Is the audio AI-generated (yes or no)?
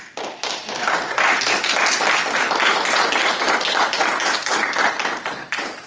no